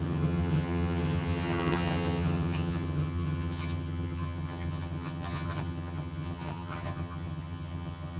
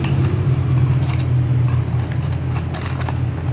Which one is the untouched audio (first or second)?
second